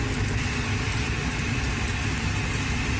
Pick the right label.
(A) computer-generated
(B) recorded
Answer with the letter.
B